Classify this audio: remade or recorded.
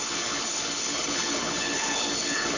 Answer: remade